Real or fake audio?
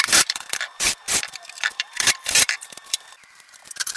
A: fake